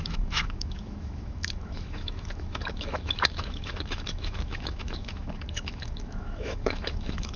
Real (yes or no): no